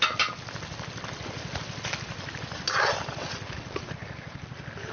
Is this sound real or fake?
real